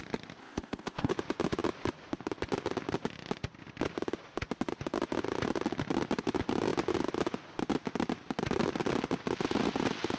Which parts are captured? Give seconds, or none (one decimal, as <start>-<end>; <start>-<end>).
0.0-0.4; 1.1-10.2

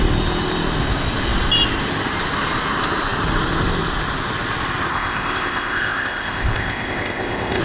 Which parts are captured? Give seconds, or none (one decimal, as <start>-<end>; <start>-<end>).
0.0-4.9

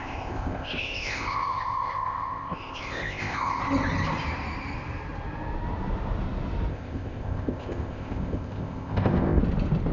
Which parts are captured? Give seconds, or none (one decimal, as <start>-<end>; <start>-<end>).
3.6-6.7; 9.4-9.9

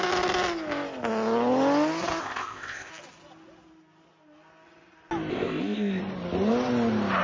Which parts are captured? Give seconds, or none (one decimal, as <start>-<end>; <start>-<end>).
0.0-2.2; 2.9-5.3; 6.0-7.2

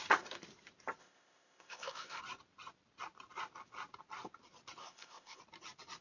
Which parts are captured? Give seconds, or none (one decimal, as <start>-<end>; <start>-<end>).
0.0-1.0; 2.2-4.8; 5.4-6.0

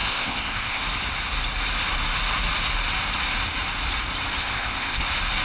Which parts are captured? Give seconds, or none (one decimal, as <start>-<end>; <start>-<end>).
0.8-4.4; 5.0-5.4